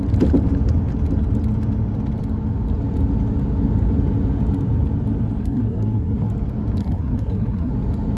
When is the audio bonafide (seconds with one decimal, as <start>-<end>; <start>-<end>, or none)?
0.0-5.4; 6.3-6.8; 7.7-8.2